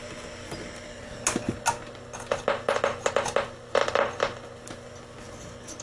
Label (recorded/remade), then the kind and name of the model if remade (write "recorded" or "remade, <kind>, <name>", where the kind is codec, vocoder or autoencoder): recorded